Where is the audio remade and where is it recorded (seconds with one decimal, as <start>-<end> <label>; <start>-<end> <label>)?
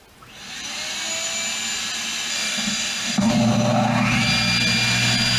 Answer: 0.0-2.3 recorded; 2.3-3.3 remade; 3.3-5.4 recorded